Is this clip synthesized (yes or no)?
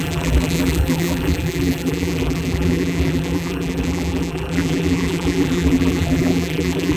yes